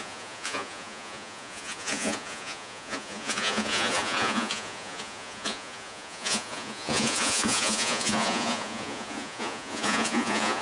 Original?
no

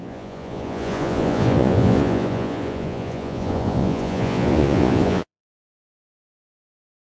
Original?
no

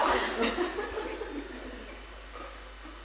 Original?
yes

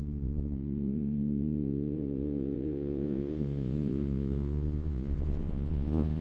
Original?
no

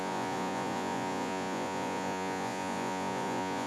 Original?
no